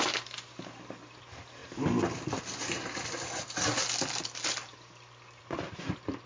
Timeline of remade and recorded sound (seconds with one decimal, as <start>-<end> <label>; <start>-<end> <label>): 0.0-6.3 recorded